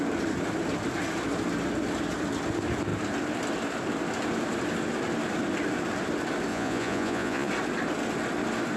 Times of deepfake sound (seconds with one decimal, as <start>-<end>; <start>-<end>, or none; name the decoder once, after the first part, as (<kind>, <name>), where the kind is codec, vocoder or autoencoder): 6.5-7.5 (vocoder, Vocos)